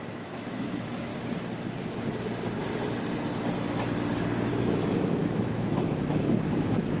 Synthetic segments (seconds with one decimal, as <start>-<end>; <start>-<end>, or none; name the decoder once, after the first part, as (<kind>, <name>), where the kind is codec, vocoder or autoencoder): 0.0-1.1 (autoencoder, DAC-VAE); 4.5-7.0